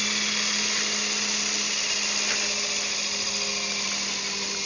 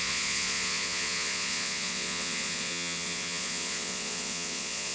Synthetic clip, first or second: second